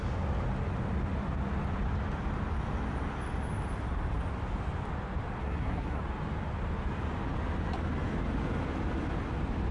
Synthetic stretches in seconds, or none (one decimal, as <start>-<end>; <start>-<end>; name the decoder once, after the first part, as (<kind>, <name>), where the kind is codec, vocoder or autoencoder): 5.4-6.0 (codec, SNAC)

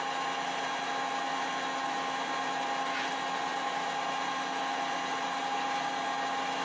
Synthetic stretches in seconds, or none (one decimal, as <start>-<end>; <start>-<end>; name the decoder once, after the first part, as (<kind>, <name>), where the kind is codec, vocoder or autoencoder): none

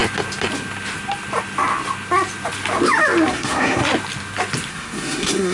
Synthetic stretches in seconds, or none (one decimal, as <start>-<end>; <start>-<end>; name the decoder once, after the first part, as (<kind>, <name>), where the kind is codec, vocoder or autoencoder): 3.3-3.8 (codec, SNAC); 4.7-5.5

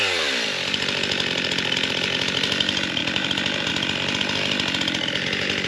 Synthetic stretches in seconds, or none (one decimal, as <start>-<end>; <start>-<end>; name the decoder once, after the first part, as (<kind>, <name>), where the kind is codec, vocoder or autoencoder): 3.0-3.7 (vocoder, BigVGAN v2)

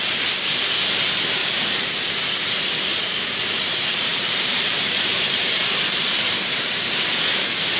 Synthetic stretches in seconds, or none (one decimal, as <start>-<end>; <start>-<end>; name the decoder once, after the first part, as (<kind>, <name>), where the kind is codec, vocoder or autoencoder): 1.4-2.1 (vocoder, BigVGAN v2); 2.9-7.2

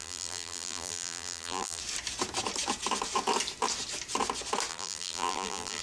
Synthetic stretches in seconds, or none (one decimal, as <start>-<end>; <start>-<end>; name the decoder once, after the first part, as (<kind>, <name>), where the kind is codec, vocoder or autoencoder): 0.0-1.8 (vocoder, BigVGAN v2); 4.7-5.8

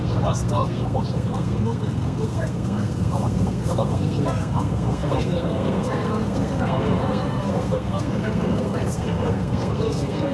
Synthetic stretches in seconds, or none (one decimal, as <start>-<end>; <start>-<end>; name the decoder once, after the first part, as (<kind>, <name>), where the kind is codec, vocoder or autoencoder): 0.0-10.3 (codec, SNAC)

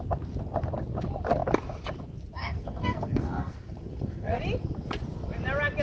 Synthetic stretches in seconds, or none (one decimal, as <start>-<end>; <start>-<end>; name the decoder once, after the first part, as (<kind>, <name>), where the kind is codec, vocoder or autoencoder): 2.4-4.4 (codec, SNAC)